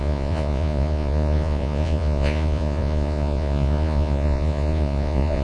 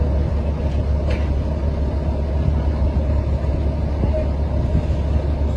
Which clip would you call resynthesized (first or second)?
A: first